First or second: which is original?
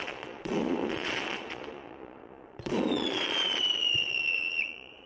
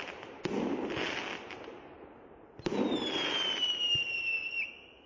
second